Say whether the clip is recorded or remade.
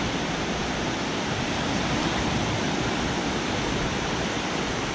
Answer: recorded